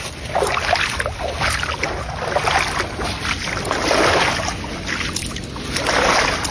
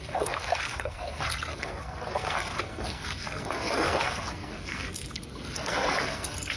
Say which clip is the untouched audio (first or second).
first